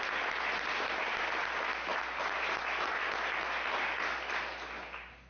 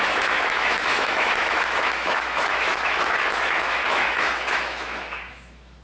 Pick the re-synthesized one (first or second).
second